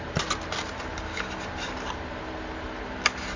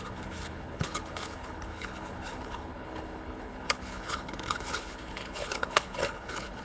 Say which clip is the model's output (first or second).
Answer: second